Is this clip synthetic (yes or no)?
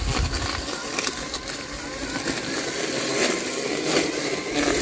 no